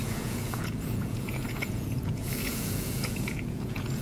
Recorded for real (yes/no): no